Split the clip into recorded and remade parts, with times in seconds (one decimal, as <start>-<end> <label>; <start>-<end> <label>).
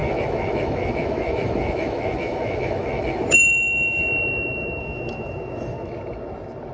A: 0.0-4.0 remade; 4.0-4.8 recorded; 4.8-5.9 remade; 5.9-6.7 recorded